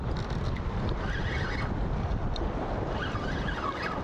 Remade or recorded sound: recorded